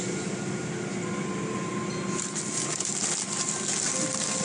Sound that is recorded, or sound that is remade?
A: recorded